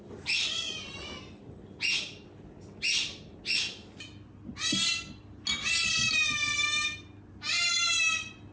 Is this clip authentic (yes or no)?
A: yes